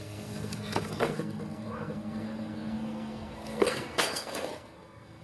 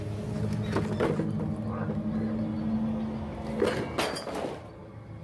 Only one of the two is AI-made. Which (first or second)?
first